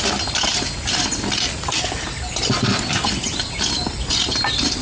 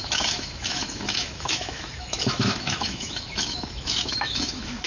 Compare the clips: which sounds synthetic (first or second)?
second